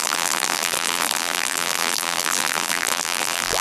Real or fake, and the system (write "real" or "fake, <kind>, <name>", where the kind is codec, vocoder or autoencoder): fake, vocoder, BigVGAN v2